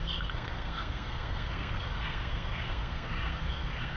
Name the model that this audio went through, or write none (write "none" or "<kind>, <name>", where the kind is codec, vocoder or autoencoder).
codec, SNAC